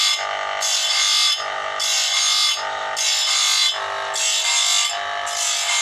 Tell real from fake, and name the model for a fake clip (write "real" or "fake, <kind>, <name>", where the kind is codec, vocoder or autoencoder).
real